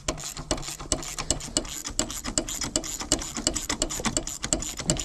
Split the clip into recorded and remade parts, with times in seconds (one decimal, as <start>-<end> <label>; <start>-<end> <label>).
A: 0.0-5.0 recorded